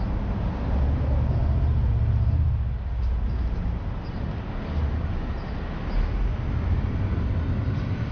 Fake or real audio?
real